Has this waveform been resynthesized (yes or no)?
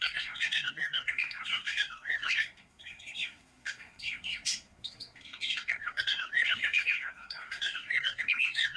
yes